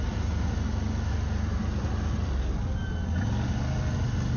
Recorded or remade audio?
recorded